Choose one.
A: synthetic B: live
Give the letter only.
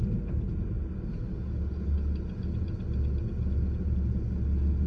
B